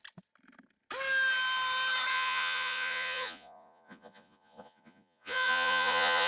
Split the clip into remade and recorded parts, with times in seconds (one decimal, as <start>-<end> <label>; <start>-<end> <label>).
0.0-2.1 recorded; 2.1-6.3 remade